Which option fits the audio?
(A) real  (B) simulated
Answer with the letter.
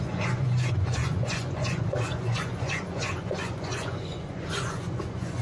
B